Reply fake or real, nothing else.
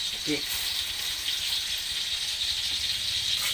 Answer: real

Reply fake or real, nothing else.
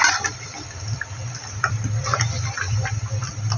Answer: real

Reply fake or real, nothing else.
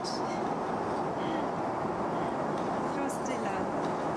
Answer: real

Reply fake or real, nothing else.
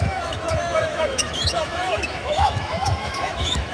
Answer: fake